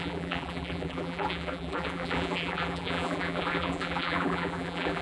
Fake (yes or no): yes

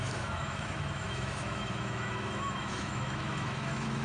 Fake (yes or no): yes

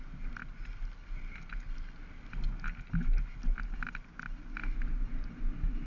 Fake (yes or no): no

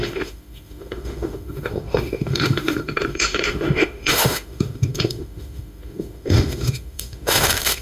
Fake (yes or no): yes